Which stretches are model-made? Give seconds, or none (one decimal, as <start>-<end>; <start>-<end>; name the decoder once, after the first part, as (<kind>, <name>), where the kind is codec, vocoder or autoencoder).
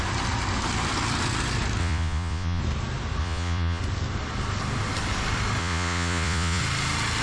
1.8-2.6 (vocoder, Vocos); 3.2-3.8; 5.6-6.6